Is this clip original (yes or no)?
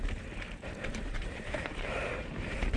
no